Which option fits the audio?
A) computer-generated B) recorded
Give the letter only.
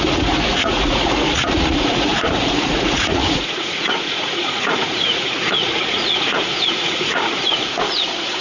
A